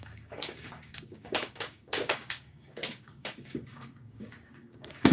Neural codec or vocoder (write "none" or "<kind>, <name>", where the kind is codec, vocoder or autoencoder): codec, DAC